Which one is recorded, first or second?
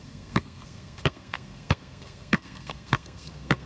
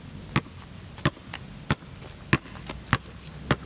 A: second